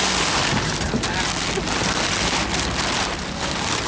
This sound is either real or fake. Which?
real